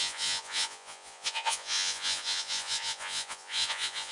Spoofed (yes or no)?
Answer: yes